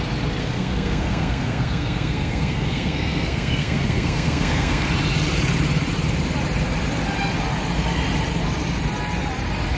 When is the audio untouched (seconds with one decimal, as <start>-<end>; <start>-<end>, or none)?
0.0-0.4; 4.9-9.8